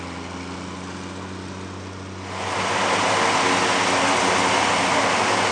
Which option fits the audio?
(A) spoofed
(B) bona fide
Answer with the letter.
B